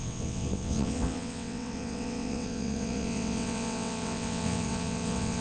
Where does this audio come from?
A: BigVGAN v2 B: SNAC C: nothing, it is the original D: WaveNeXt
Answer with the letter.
D